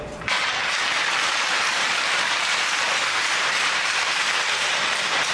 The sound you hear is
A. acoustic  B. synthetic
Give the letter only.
B